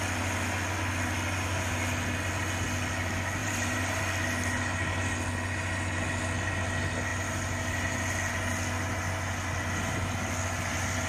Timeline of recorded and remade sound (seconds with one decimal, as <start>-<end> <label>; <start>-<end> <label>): 0.0-3.4 recorded; 3.4-4.0 remade; 4.0-11.1 recorded

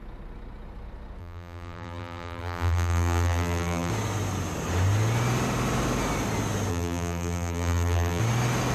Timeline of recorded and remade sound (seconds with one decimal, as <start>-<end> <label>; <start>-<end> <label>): 0.0-1.2 recorded; 1.2-3.9 remade; 3.9-6.7 recorded; 6.7-8.2 remade; 8.2-8.7 recorded

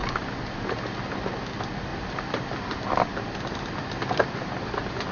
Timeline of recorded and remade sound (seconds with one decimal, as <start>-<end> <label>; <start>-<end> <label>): 0.0-1.9 recorded; 1.9-5.1 remade

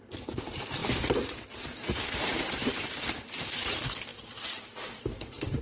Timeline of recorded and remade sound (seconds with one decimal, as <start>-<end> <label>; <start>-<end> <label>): 0.0-4.1 remade; 4.1-5.0 recorded; 5.0-5.6 remade

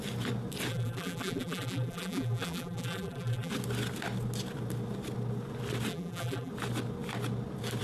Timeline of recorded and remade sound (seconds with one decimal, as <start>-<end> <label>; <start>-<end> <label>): 0.0-0.7 recorded; 0.7-3.5 remade; 3.5-5.9 recorded; 5.9-6.5 remade; 6.5-7.8 recorded

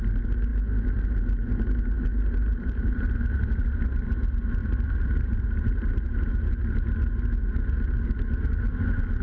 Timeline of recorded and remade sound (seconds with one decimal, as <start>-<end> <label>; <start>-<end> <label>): 0.0-2.1 recorded; 2.1-3.0 remade; 3.0-4.6 recorded; 4.6-6.5 remade; 6.5-9.2 recorded

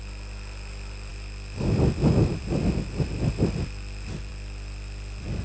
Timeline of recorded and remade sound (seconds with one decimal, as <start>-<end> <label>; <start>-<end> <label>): 0.0-5.4 remade

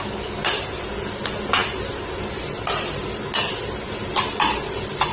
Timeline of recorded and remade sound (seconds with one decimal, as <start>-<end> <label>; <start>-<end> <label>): 0.0-5.1 recorded